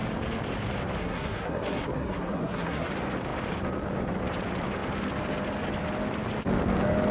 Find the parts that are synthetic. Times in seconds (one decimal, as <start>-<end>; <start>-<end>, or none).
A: 1.0-2.9